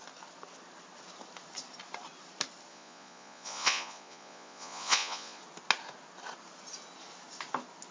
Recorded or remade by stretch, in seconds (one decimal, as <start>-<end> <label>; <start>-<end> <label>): 0.0-2.7 recorded; 2.7-5.4 remade; 5.4-7.9 recorded